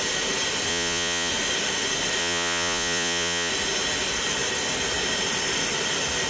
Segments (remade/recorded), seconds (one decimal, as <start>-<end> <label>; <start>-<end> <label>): 0.0-0.7 recorded; 0.7-1.3 remade; 1.3-2.2 recorded; 2.2-3.5 remade; 3.5-6.3 recorded